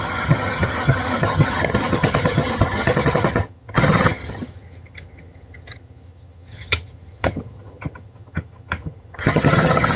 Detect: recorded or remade remade